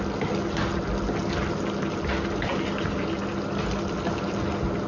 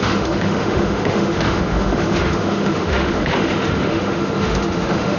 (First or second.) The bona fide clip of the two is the first